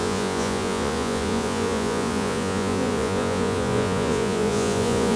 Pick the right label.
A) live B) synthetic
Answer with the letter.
B